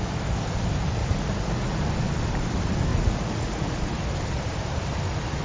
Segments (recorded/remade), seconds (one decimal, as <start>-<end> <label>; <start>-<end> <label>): 0.0-1.0 recorded; 1.0-1.8 remade; 1.8-2.9 recorded; 2.9-3.8 remade; 3.8-5.4 recorded